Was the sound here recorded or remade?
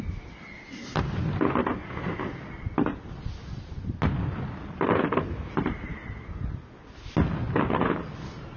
recorded